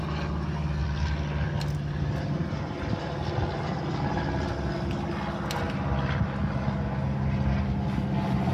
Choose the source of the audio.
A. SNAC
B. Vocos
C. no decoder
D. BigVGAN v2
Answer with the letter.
C